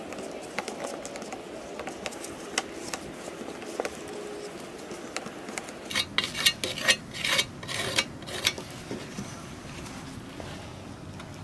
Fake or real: real